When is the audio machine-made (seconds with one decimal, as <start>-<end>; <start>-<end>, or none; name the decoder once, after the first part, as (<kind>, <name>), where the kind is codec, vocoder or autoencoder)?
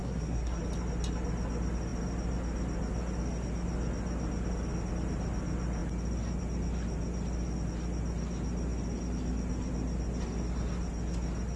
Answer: 0.0-0.6 (codec, SNAC)